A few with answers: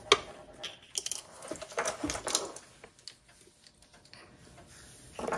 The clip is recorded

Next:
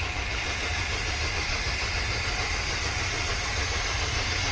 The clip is recorded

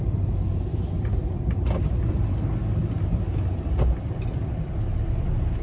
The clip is recorded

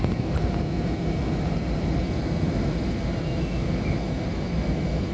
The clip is recorded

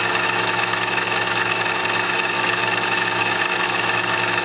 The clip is remade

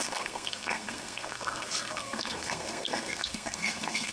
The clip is remade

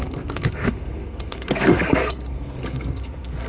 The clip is remade